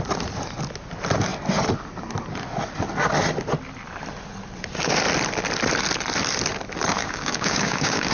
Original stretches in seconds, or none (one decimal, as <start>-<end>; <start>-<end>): 0.0-7.0